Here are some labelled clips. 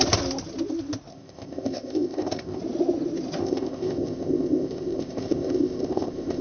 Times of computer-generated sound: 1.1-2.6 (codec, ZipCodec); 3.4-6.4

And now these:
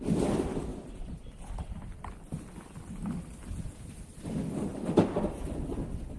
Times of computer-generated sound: none

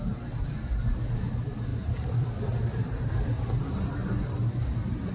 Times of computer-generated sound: 1.7-5.1 (vocoder, BigVGAN v2)

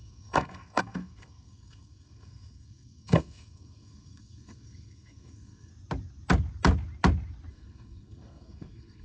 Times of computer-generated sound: 0.0-5.7 (codec, SNAC); 7.5-9.0

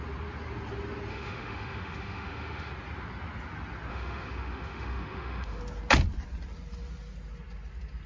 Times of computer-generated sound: 1.1-2.7 (autoencoder, DAC-VAE); 3.9-5.6

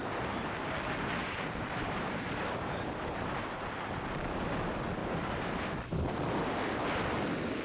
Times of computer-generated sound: 1.2-4.5 (vocoder, BigVGAN v2); 5.0-5.5